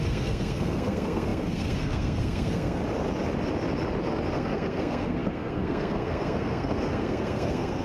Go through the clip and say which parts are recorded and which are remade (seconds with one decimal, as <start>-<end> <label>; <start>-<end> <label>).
0.0-2.8 remade; 2.8-4.3 recorded; 4.3-7.8 remade